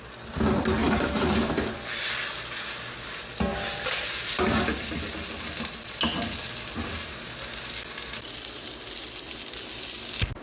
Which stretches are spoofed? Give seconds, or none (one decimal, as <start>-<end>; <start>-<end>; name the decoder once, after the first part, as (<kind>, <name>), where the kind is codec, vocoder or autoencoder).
0.8-1.8 (vocoder, BigVGAN v2); 3.5-4.3

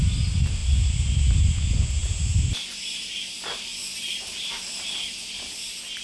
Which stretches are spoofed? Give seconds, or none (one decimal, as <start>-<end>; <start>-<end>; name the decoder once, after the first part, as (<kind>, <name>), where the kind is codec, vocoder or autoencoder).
none